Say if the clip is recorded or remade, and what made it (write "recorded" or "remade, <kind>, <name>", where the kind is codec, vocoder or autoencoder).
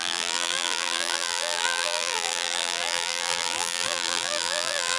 remade, vocoder, BigVGAN v2